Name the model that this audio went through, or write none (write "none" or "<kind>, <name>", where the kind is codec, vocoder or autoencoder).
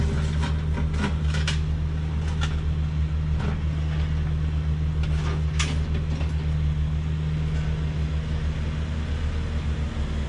none